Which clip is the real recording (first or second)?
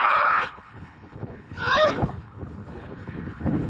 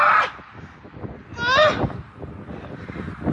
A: second